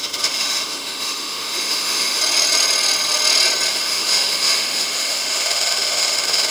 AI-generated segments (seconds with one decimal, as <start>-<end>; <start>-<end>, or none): 0.0-2.2; 3.7-6.5